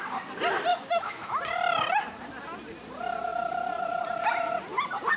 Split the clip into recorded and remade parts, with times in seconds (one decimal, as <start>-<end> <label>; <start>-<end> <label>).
0.0-0.7 recorded; 0.7-1.4 remade; 1.4-5.2 recorded